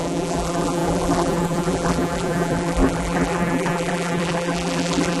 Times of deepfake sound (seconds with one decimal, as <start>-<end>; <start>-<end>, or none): 0.0-5.2